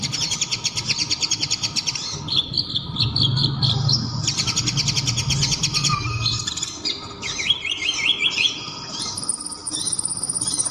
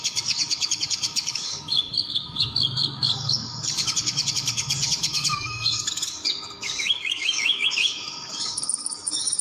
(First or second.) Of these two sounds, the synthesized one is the second